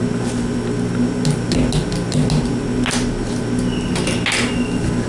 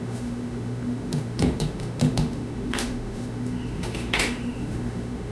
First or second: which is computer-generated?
second